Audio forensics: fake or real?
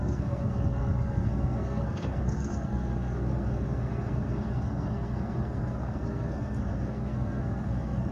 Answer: fake